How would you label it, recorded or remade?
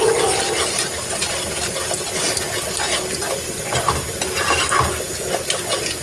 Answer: recorded